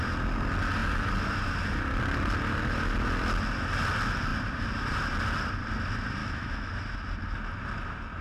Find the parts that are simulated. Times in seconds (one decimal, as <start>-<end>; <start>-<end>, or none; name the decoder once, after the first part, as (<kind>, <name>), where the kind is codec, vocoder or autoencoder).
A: 6.2-6.7 (autoencoder, DAC-VAE)